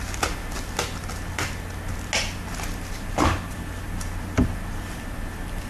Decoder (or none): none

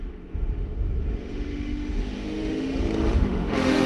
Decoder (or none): autoencoder, DAC-VAE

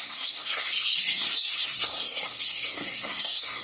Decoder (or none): codec, SNAC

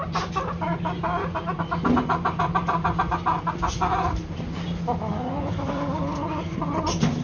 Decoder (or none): none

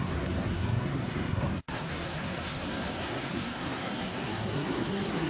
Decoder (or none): codec, SNAC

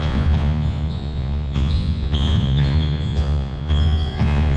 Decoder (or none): vocoder, Vocos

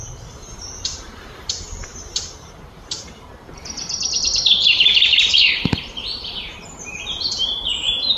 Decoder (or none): vocoder, BigVGAN v2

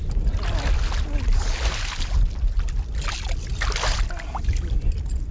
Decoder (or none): none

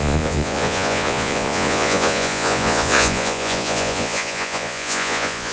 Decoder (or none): vocoder, Vocos